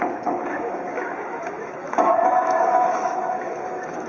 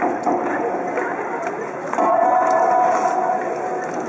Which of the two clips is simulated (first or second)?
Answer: first